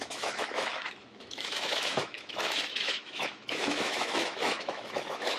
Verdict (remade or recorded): remade